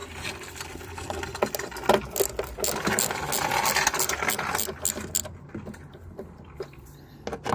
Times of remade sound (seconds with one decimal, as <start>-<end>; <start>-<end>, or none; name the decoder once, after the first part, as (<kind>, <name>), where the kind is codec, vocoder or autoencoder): 0.0-1.4 (vocoder, BigVGAN v2)

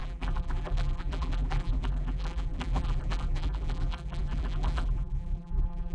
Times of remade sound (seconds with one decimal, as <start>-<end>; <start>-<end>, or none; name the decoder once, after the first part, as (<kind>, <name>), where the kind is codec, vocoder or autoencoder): 0.0-5.9 (vocoder, BigVGAN v2)